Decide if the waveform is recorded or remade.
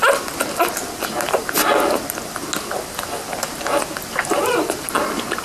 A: recorded